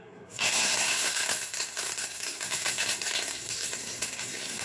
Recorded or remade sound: remade